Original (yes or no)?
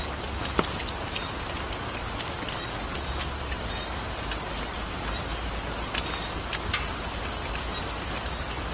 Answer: yes